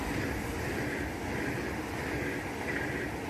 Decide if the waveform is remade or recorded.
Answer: recorded